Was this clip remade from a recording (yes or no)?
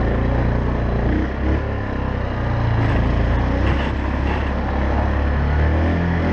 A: no